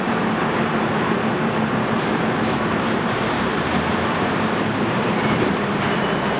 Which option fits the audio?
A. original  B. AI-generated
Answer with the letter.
B